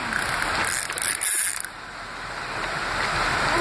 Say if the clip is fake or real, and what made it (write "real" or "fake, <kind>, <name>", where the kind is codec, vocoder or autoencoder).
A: real